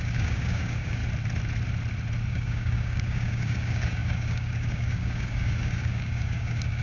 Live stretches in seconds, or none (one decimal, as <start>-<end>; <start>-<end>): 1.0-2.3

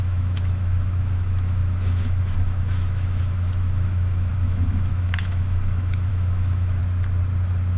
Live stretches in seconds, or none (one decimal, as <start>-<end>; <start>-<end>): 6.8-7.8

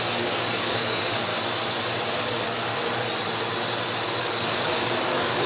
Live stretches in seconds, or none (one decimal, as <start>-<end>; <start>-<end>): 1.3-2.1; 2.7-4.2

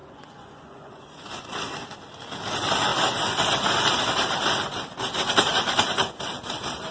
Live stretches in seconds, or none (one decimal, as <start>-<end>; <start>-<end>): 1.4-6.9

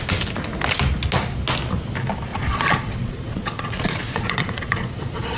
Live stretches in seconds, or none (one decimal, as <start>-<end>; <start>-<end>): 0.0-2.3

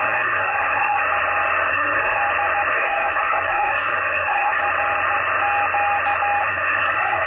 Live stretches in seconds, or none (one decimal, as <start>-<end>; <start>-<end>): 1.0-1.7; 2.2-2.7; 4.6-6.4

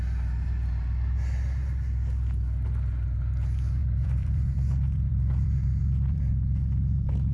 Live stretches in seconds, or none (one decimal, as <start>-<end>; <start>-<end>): 0.0-3.8; 6.2-7.3

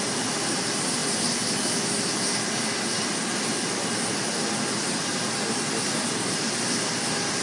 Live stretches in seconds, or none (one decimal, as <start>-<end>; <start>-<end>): 0.0-7.4